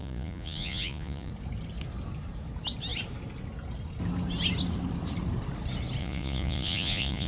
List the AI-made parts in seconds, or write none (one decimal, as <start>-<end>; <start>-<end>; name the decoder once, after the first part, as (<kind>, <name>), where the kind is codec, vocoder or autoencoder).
0.0-1.3 (vocoder, Vocos); 6.0-7.3